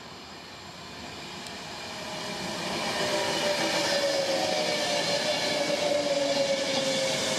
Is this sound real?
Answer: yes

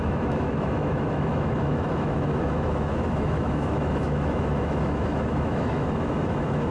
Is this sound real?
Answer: no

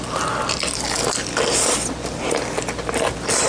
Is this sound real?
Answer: yes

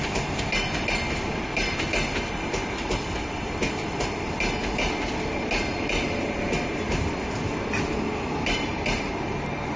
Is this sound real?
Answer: yes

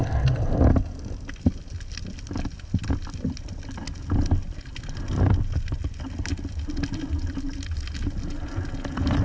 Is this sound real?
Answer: yes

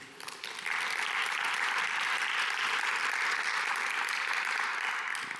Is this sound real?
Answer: yes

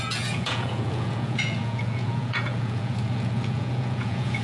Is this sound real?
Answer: no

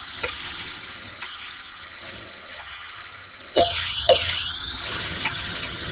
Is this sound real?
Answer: no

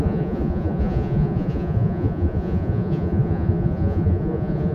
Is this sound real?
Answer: no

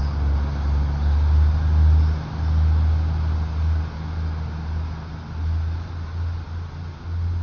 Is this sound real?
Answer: yes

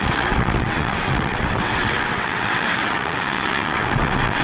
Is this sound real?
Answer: no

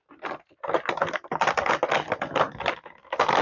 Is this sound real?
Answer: yes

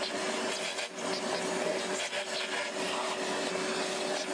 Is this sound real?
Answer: yes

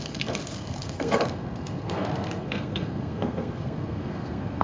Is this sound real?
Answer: no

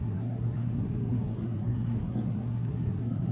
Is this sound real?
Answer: no